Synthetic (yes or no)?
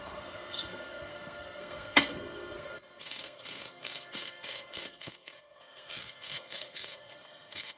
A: yes